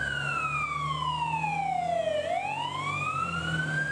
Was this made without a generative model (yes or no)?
yes